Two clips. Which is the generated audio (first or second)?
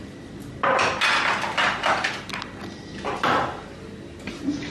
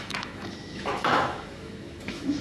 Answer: second